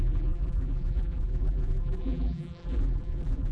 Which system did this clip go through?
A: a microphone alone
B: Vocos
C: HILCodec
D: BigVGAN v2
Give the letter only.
D